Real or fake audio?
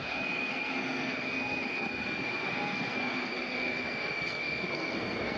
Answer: fake